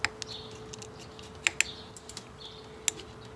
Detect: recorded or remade recorded